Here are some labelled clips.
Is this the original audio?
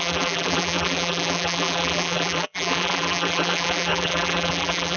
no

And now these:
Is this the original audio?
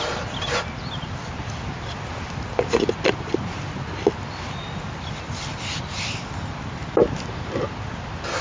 yes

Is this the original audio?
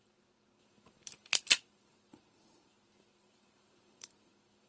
no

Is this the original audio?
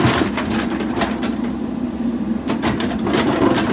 no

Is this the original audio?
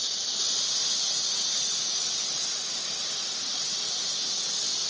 yes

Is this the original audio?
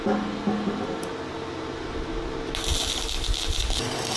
yes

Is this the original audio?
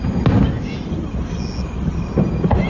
yes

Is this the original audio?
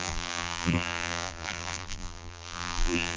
no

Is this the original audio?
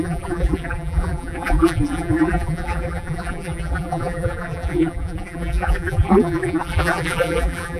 no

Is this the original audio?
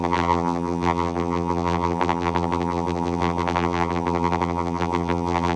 no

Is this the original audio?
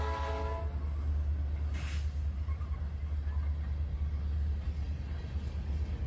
yes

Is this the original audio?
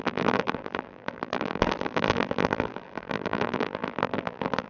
no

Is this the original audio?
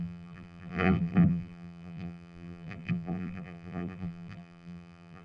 no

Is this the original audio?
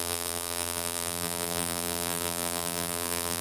no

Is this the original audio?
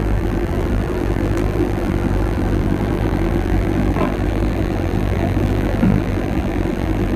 no